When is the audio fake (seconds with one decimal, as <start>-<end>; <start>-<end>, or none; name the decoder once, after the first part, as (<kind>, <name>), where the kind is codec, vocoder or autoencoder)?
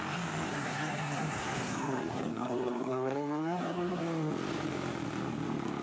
0.5-4.0 (codec, SNAC)